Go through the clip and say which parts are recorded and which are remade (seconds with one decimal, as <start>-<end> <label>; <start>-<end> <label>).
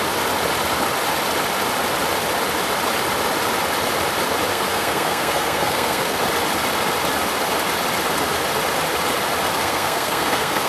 0.0-4.5 recorded; 4.5-6.2 remade; 6.2-9.6 recorded; 9.6-10.7 remade